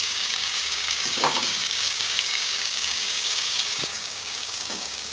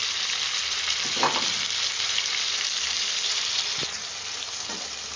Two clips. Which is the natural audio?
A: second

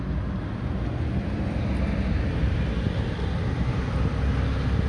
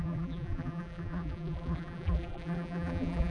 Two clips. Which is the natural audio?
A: first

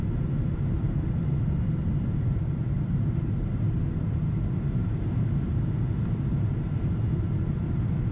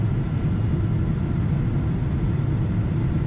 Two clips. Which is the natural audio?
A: second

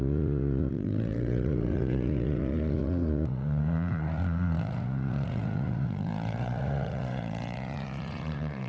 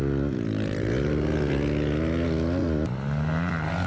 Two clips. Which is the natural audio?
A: second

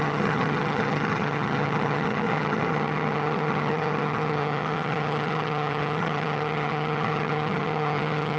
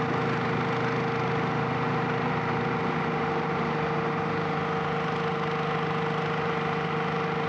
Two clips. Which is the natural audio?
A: second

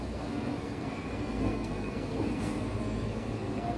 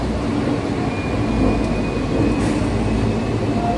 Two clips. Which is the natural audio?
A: second